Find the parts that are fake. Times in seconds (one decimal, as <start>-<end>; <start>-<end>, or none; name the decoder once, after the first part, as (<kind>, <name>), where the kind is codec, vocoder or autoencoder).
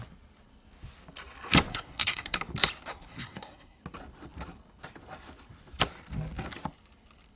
1.7-2.4 (codec, SNAC); 2.9-3.8